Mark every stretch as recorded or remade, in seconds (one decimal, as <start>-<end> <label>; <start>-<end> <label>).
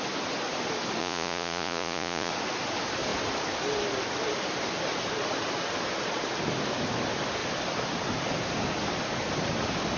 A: 0.0-1.0 recorded; 1.0-2.3 remade; 2.3-10.0 recorded